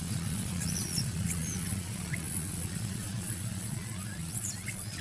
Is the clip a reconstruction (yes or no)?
yes